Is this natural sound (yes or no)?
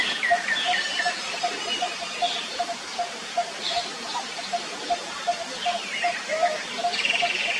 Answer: no